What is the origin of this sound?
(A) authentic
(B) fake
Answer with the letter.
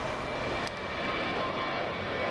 A